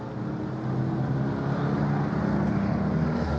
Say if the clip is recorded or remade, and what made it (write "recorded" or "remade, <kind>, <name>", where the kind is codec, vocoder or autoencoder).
recorded